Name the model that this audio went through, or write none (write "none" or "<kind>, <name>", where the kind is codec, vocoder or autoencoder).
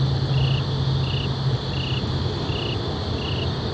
none